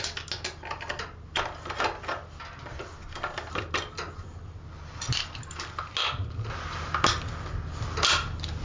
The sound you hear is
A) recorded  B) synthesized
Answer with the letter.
A